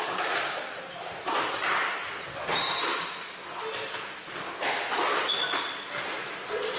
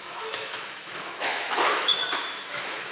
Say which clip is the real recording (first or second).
first